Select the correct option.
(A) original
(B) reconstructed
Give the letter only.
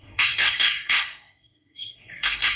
B